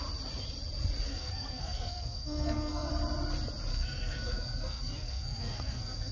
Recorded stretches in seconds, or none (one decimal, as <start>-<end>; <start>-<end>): 0.0-1.1; 2.9-3.7